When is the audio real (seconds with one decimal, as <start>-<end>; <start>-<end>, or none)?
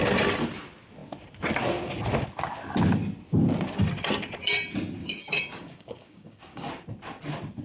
0.0-5.0; 6.7-7.6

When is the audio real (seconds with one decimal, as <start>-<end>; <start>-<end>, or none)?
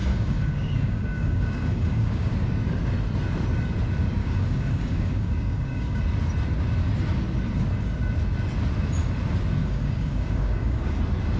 2.3-4.2; 6.0-9.6; 11.0-11.4